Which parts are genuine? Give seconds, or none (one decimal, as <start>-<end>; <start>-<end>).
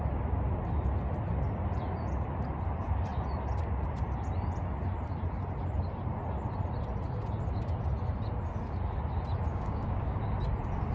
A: 0.0-9.5; 10.2-10.9